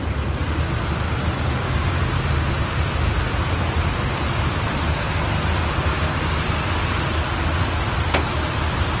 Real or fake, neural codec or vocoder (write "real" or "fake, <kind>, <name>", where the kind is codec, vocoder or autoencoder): real